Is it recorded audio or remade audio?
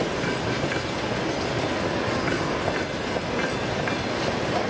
recorded